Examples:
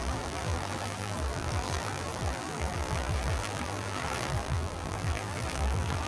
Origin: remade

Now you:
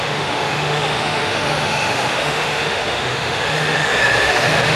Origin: remade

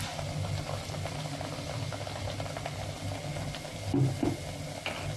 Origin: recorded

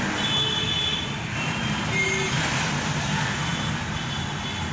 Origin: recorded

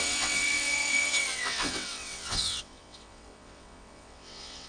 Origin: remade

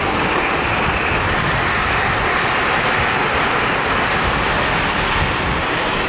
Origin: recorded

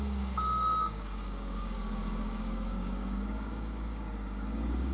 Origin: remade